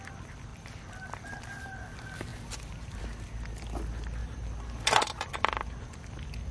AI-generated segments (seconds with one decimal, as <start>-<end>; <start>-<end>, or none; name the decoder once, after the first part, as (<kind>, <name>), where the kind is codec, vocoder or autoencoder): 0.5-1.4 (vocoder, BigVGAN v2); 2.3-3.0; 4.2-5.8